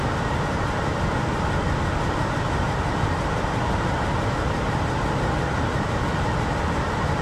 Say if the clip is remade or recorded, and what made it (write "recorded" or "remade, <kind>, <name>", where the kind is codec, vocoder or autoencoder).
recorded